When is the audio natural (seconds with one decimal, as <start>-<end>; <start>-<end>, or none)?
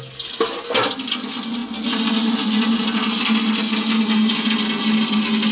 0.0-5.5